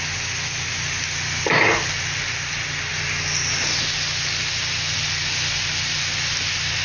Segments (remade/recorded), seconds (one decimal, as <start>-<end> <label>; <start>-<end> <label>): 0.0-6.8 recorded